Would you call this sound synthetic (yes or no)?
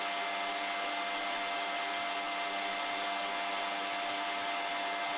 no